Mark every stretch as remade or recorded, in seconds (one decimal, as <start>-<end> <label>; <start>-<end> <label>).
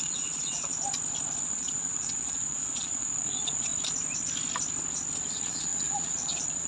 0.0-0.7 remade; 0.7-1.4 recorded; 1.4-3.7 remade; 3.7-5.3 recorded; 5.3-6.7 remade